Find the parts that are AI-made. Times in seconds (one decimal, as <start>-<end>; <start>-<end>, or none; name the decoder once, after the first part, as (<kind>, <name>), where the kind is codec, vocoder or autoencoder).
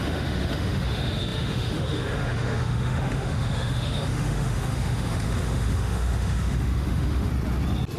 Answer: 0.0-7.3 (autoencoder, DAC-VAE)